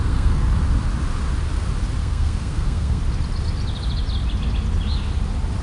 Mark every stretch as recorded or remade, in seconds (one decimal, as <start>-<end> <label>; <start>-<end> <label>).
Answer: 0.0-0.5 remade; 0.5-2.0 recorded; 2.0-3.0 remade; 3.0-5.6 recorded

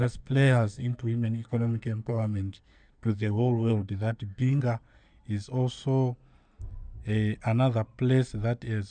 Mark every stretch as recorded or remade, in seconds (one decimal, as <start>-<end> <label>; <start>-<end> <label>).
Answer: 0.0-4.6 remade; 4.6-8.9 recorded

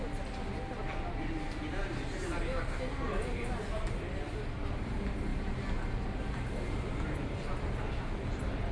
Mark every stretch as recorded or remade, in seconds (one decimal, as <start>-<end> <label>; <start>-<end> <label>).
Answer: 0.0-8.7 recorded